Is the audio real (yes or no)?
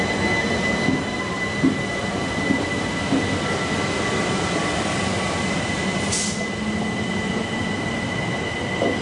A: yes